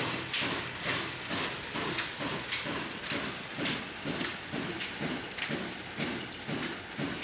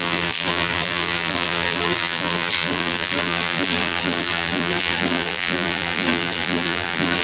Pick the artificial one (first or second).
second